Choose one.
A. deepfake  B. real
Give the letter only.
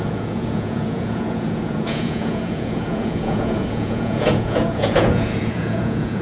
A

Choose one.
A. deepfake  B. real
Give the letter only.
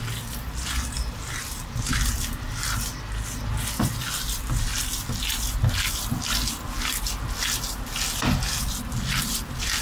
B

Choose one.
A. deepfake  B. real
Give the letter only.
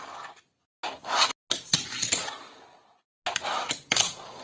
B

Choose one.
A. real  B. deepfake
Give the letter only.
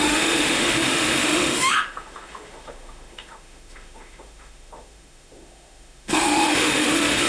B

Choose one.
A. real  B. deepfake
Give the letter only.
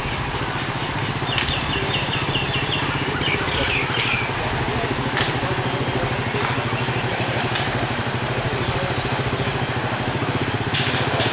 A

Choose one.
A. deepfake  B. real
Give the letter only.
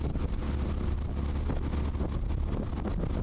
B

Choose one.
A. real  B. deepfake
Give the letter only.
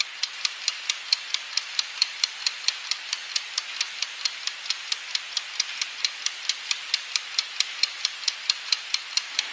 B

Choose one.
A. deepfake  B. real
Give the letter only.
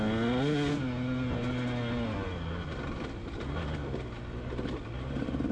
B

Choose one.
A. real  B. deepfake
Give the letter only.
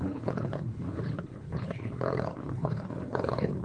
B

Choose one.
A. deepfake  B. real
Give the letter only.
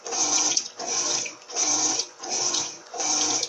A